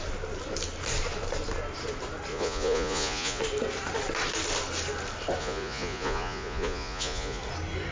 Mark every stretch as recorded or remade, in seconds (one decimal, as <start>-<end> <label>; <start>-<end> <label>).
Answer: 0.0-2.3 recorded; 2.3-3.4 remade; 3.4-5.4 recorded; 5.4-7.4 remade; 7.4-7.9 recorded